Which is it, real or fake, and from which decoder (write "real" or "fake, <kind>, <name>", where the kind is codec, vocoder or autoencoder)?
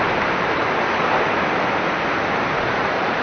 real